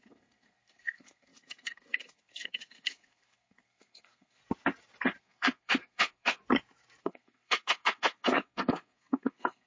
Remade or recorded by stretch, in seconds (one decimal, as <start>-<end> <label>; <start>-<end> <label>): 0.0-4.4 remade; 4.4-5.2 recorded; 5.2-6.4 remade; 6.4-7.0 recorded; 7.0-9.7 remade